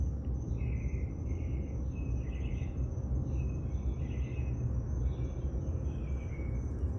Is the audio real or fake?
real